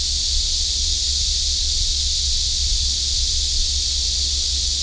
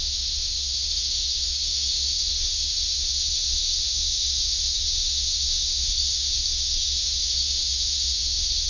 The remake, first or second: second